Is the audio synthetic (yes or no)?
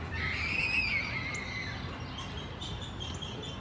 no